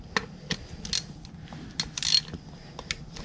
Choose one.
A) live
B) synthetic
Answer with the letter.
A